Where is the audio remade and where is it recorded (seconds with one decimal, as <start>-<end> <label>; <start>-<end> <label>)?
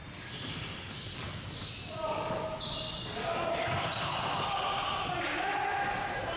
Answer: 0.0-3.8 recorded; 3.8-6.4 remade